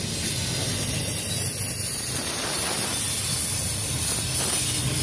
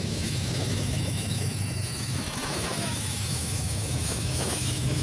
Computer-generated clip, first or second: second